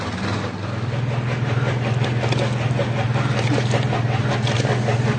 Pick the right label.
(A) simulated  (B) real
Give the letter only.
B